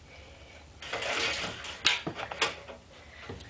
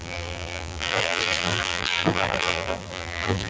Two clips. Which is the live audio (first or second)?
first